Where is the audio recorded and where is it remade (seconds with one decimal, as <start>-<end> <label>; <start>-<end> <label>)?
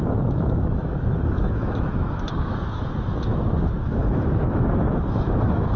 0.0-5.8 remade